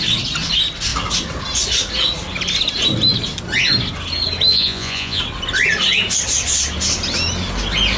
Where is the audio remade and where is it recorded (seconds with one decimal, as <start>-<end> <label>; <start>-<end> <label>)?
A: 0.0-4.5 recorded; 4.5-5.2 remade; 5.2-8.0 recorded